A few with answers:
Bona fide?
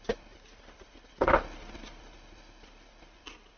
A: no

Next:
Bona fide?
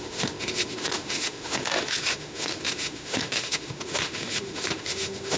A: no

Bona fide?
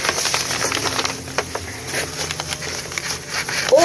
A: yes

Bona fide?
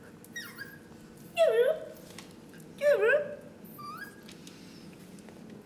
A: yes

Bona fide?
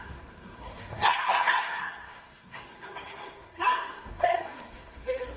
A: no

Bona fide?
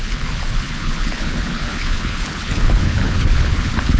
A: no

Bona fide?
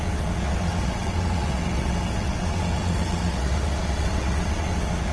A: no